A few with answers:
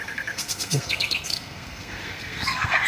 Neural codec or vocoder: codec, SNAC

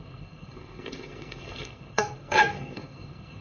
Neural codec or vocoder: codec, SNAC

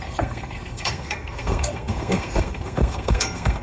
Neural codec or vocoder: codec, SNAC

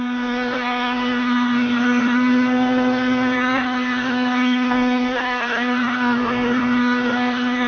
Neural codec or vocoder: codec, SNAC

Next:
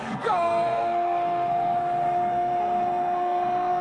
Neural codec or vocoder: codec, SNAC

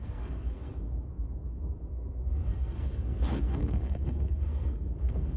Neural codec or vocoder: codec, SNAC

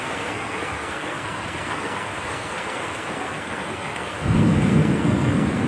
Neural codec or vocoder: codec, SNAC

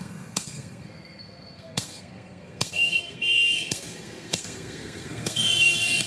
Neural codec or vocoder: codec, SNAC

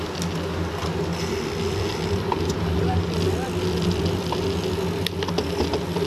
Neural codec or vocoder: none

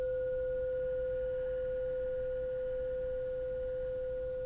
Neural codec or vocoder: none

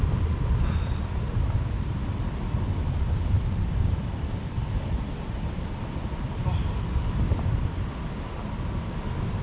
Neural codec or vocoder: none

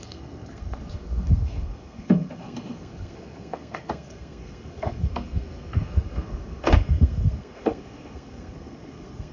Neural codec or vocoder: codec, SNAC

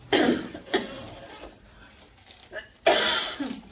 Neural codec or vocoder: none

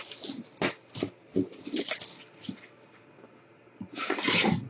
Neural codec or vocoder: none